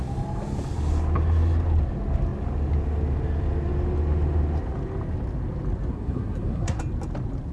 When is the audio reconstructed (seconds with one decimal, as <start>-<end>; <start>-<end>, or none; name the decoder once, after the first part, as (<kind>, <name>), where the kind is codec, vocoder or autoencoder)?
5.9-6.8 (codec, SNAC)